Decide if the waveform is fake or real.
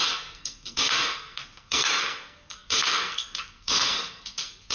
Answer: fake